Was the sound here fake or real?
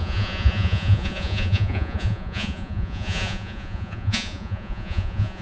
fake